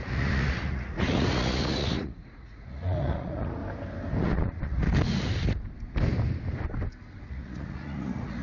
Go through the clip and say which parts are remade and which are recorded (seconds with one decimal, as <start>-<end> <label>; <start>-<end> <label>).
0.0-3.6 remade; 3.6-4.2 recorded; 4.2-4.8 remade; 4.8-7.2 recorded; 7.2-8.4 remade